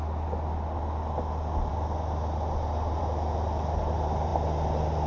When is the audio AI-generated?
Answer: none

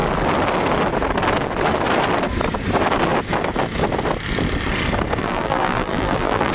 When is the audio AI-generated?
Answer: 5.2-6.5 (vocoder, BigVGAN v2)

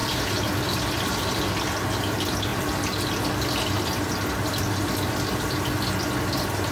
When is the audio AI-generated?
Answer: none

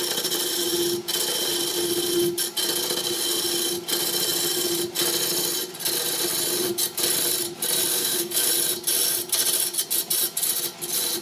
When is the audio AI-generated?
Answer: 7.9-8.5 (codec, SNAC)

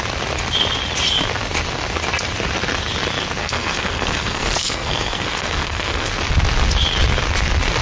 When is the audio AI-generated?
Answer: 3.4-6.1 (codec, SNAC)

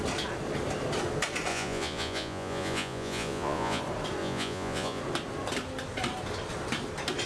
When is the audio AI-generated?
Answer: 1.5-3.8 (vocoder, Vocos); 4.2-5.0

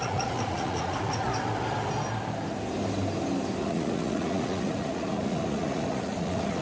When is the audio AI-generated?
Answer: 0.0-1.3 (vocoder, Vocos); 3.6-6.6

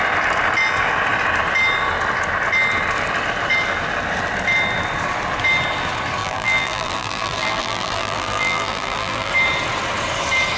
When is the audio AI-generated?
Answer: 6.2-9.3 (vocoder, BigVGAN v2)